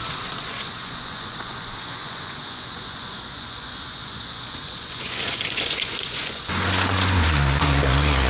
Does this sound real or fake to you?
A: fake